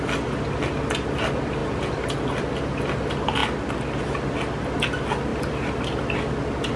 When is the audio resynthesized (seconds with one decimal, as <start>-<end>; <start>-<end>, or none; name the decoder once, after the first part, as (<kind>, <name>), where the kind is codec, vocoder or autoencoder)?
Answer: none